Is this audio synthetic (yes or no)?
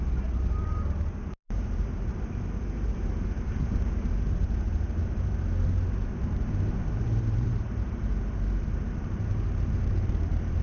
yes